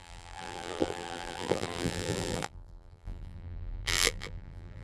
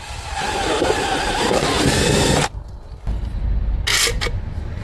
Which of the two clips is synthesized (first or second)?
first